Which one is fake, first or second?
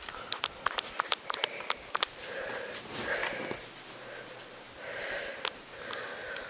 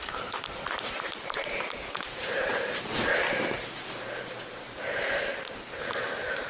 second